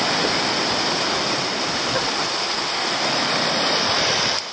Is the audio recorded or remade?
recorded